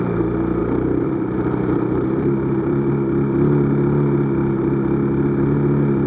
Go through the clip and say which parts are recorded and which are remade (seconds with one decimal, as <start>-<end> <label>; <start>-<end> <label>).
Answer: 0.0-0.6 recorded; 0.6-2.9 remade; 2.9-6.1 recorded